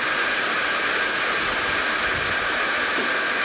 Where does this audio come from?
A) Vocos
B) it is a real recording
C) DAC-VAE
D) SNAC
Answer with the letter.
B